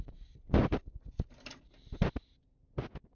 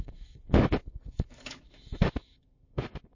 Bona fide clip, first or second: first